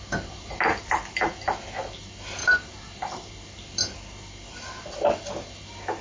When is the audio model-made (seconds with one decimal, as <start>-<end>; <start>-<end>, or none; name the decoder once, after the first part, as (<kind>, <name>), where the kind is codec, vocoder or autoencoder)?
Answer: 2.4-3.3 (vocoder, BigVGAN v2)